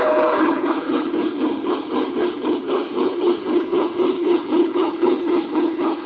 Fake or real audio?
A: fake